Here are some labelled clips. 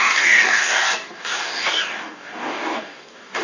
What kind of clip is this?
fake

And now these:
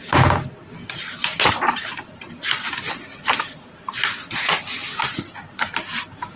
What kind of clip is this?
real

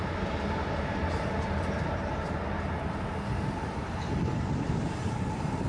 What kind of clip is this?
fake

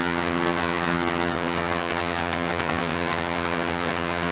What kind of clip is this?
fake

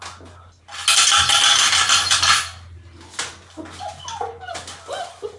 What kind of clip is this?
real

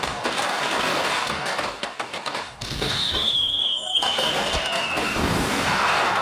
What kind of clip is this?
fake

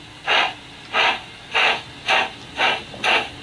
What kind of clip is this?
real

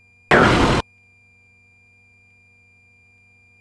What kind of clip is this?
real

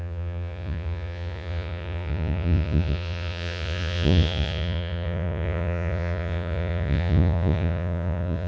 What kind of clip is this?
fake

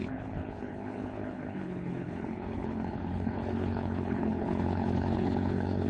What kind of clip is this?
fake